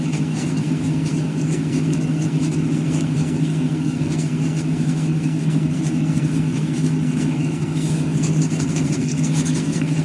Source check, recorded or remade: remade